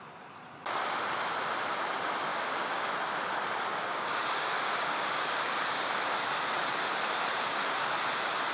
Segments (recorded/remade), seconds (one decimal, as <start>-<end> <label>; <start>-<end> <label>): 0.0-2.3 recorded; 2.3-2.9 remade; 2.9-3.7 recorded; 3.7-6.0 remade; 6.0-8.5 recorded